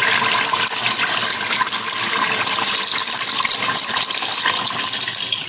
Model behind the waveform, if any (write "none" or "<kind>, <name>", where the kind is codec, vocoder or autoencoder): none